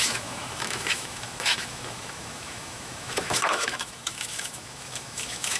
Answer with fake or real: fake